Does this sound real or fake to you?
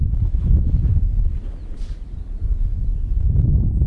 real